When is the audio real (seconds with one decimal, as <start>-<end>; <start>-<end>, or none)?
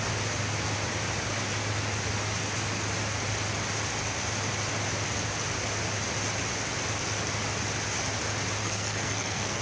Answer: 0.0-8.6